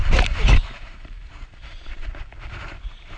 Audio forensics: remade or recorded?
remade